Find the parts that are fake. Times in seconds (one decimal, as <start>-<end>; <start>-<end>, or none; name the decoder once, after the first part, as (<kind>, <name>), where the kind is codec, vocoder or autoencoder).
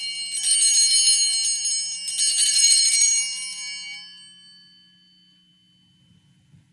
2.4-3.1 (vocoder, Vocos)